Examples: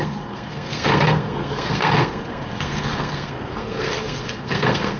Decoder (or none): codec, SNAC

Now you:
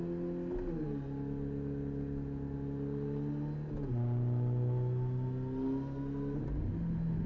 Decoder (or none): none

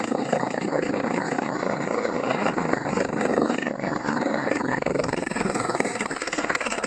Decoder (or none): codec, SNAC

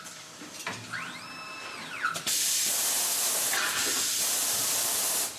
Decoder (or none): vocoder, BigVGAN v2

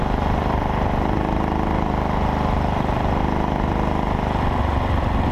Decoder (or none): none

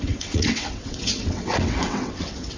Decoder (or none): vocoder, WaveNeXt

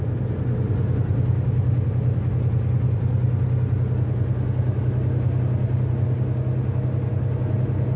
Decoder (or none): none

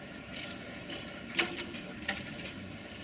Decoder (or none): none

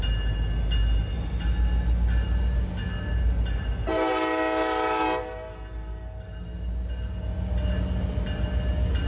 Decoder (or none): none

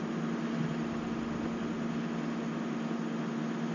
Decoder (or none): none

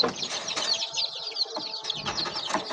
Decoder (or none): none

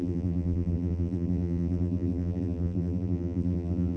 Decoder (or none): vocoder, BigVGAN v2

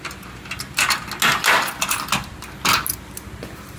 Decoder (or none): none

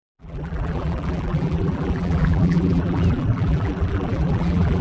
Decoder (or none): vocoder, BigVGAN v2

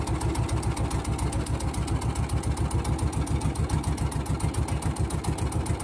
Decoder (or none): none